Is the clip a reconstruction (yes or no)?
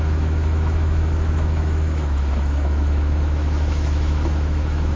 yes